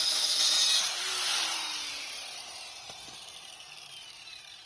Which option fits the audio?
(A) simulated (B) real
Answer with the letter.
A